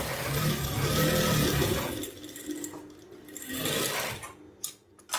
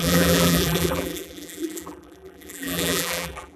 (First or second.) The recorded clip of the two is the first